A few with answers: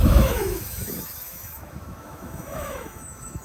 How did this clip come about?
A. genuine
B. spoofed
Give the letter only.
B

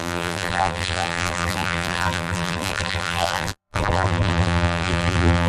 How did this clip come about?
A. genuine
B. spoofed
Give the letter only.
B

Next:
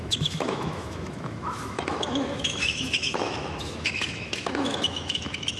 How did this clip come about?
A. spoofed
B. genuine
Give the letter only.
A